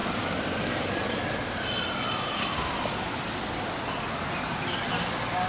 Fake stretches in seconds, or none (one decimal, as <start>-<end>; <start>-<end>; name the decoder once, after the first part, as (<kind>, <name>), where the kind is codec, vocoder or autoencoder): 0.0-2.8 (vocoder, BigVGAN v2)